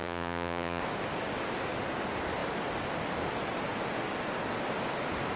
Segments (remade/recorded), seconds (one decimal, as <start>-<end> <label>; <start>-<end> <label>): 0.0-0.8 remade; 0.8-5.4 recorded

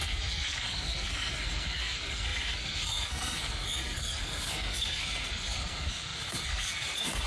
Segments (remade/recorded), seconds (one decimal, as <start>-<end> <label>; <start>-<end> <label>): 0.0-7.3 remade

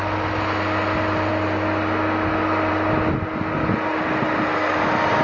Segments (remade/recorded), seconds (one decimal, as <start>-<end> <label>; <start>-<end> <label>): 0.0-5.2 recorded

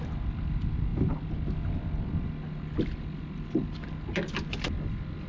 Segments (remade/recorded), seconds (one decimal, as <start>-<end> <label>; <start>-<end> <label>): 0.0-5.3 recorded

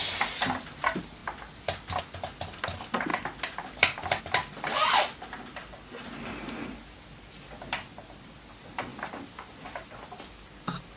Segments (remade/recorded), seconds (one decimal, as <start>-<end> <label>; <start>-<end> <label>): 0.0-3.1 recorded; 3.1-4.2 remade; 4.2-8.9 recorded; 8.9-10.5 remade; 10.5-11.0 recorded

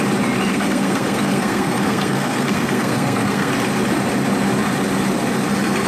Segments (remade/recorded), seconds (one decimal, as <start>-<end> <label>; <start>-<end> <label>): 0.0-0.5 recorded; 0.5-3.5 remade; 3.5-5.9 recorded